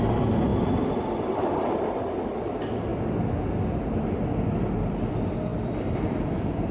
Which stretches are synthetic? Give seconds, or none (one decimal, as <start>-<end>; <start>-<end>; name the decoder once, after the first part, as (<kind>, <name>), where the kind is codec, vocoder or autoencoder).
0.0-2.9 (vocoder, BigVGAN v2); 5.1-6.7